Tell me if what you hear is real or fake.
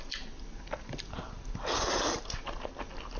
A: real